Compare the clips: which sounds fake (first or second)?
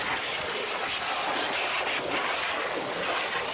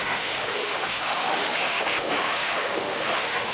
second